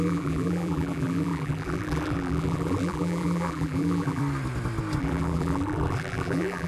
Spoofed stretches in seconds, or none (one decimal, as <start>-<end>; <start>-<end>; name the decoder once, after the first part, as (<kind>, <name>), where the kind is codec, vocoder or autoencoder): 0.0-4.2 (vocoder, BigVGAN v2); 5.0-6.7